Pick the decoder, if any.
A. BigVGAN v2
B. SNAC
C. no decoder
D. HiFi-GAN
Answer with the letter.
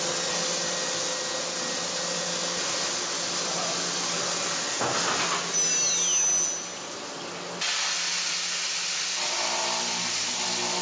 C